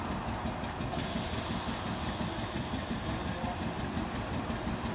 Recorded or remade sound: recorded